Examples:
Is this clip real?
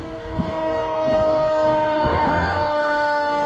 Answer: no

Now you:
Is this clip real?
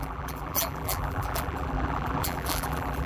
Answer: no